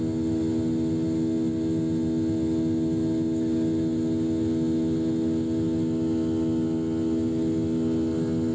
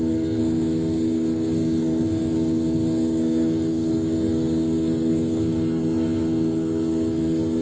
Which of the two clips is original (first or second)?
first